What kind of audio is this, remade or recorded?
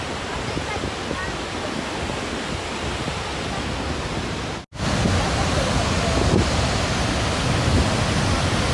recorded